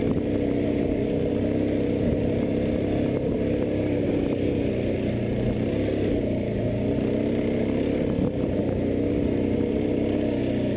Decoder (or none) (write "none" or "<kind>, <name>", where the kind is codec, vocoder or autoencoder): none